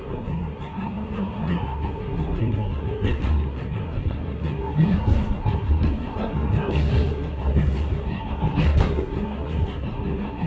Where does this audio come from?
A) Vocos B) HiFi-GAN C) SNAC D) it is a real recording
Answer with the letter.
C